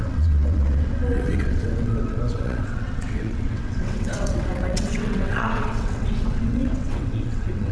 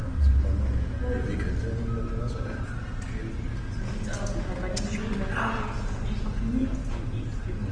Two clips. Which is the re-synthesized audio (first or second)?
first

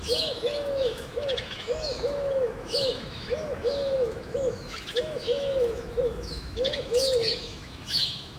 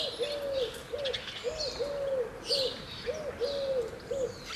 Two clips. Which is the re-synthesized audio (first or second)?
first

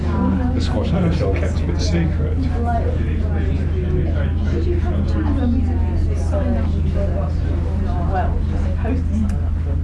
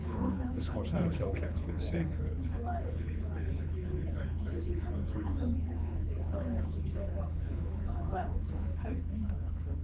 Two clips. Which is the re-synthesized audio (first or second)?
second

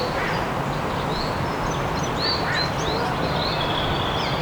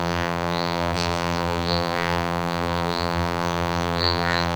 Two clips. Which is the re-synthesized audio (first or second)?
second